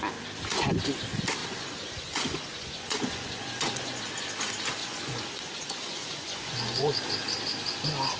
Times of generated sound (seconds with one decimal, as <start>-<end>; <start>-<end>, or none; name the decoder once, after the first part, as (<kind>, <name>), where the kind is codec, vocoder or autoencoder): 1.4-4.0 (vocoder, Vocos); 4.8-7.0